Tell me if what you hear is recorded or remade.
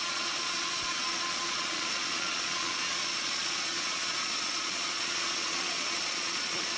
remade